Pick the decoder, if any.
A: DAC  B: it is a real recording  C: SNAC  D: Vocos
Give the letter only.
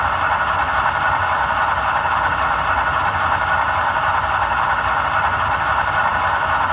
B